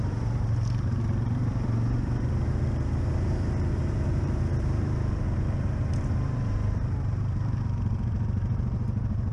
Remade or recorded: remade